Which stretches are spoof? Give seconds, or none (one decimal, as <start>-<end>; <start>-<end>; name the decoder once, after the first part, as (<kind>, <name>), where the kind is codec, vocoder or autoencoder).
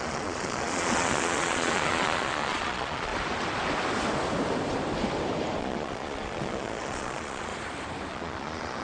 0.0-3.1 (vocoder, Vocos); 5.6-7.5; 8.1-8.8